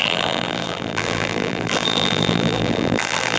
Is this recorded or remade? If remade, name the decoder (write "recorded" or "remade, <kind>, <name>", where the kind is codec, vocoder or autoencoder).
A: remade, vocoder, BigVGAN v2